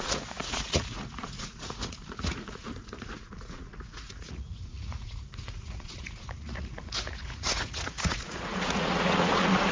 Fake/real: fake